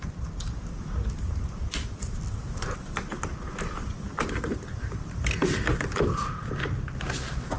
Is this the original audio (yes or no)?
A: yes